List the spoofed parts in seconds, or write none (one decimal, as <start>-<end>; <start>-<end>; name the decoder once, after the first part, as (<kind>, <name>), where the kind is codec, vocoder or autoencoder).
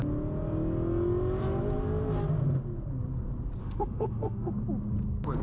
3.6-4.5 (autoencoder, DAC-VAE)